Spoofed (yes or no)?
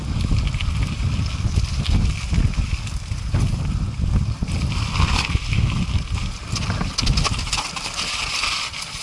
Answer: no